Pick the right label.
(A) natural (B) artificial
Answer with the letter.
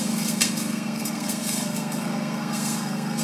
B